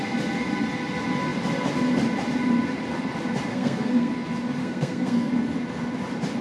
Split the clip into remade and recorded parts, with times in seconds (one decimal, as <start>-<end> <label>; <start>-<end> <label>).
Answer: 0.0-3.5 recorded; 3.5-4.1 remade; 4.1-4.6 recorded; 4.6-5.3 remade; 5.3-6.4 recorded